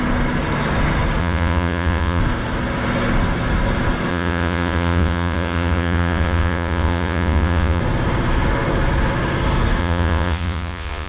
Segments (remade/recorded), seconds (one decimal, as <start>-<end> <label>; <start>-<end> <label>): 0.0-1.2 recorded; 1.2-2.2 remade; 2.2-4.1 recorded; 4.1-7.8 remade; 7.8-9.8 recorded; 9.8-11.1 remade